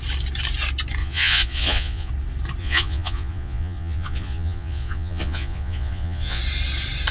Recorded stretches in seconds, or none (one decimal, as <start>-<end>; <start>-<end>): 0.0-1.0; 2.1-2.6; 6.4-7.1